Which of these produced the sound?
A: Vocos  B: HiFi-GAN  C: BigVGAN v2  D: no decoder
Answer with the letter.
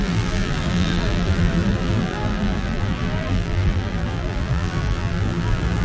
C